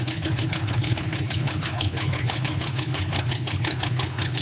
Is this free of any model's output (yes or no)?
no